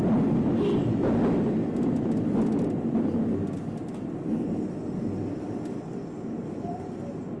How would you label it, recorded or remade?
recorded